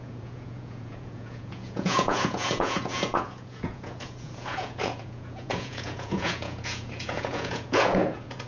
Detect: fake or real fake